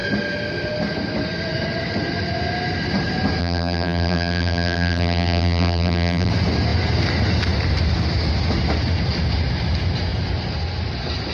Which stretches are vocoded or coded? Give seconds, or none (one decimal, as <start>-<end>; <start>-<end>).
3.4-6.3